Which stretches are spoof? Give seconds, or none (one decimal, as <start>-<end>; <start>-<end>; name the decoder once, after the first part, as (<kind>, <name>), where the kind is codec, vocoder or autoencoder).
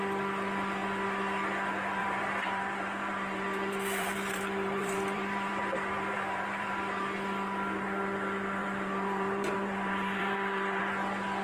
2.0-6.7 (vocoder, BigVGAN v2); 8.6-10.8